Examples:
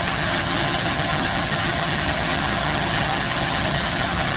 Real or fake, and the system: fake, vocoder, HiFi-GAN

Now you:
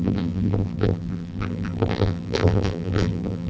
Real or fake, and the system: fake, vocoder, BigVGAN v2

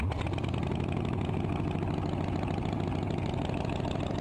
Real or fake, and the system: real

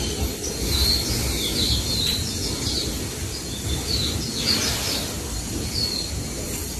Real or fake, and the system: real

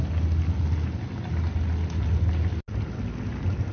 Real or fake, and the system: real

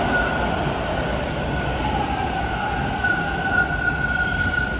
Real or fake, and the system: real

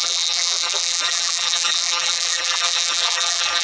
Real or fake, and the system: fake, vocoder, BigVGAN v2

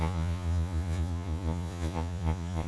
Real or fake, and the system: fake, vocoder, Vocos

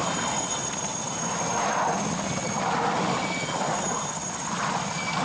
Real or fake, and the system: real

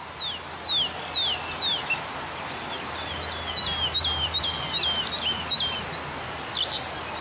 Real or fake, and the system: real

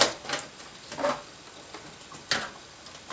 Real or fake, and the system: real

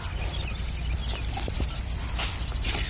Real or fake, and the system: real